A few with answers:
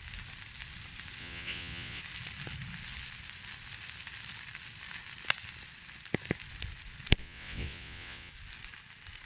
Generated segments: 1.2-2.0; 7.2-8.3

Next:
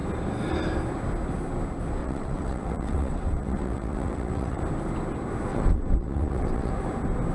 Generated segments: 2.0-4.6; 5.5-6.7

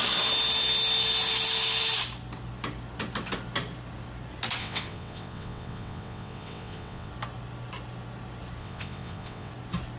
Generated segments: 4.6-7.1; 8.6-9.5

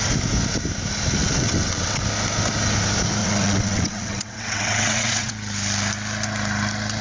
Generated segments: 1.2-2.0; 3.2-5.3

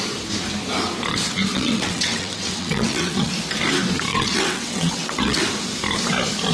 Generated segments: 1.5-3.3; 4.1-5.4

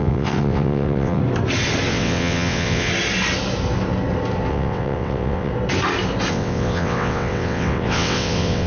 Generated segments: 0.0-1.2; 1.9-2.9; 4.5-5.5; 6.3-8.7

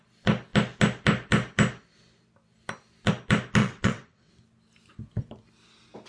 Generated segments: 3.6-4.3